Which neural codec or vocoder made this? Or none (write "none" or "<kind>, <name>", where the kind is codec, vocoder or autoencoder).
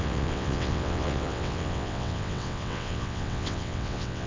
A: vocoder, WaveNeXt